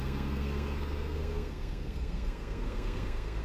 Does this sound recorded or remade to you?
remade